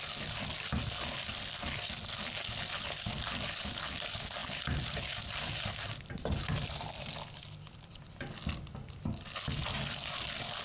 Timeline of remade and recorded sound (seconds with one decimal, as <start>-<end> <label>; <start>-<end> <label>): 0.0-10.6 recorded